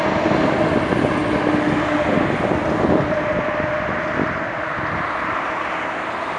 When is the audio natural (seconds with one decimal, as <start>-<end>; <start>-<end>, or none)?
0.0-6.4